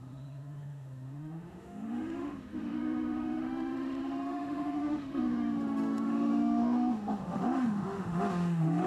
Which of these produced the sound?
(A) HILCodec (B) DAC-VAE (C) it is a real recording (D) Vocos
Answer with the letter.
B